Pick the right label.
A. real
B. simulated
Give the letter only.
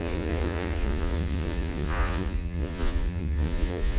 B